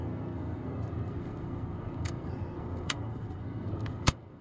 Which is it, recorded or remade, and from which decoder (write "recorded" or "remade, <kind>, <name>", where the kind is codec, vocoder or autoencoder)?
remade, codec, SNAC